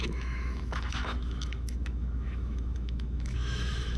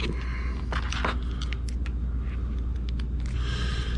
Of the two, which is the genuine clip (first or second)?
second